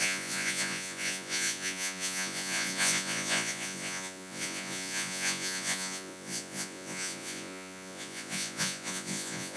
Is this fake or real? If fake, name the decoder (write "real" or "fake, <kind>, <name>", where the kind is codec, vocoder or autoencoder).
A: fake, vocoder, Vocos